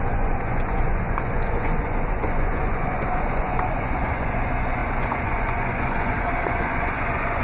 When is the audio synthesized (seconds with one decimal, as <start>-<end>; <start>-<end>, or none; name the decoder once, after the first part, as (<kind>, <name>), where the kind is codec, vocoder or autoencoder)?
0.0-7.4 (vocoder, Vocos)